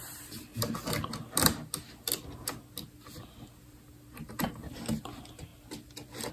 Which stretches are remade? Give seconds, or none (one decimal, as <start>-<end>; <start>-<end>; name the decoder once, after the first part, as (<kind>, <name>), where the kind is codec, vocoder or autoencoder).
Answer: 0.0-0.5 (vocoder, BigVGAN v2); 4.3-5.5